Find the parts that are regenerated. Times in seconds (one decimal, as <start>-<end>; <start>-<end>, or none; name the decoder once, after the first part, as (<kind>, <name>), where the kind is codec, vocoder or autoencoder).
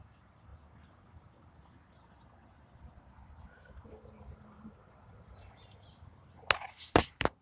none